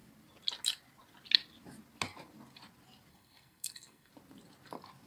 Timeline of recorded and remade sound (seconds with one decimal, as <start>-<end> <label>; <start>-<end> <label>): 0.0-3.1 recorded; 3.1-4.1 remade; 4.1-5.1 recorded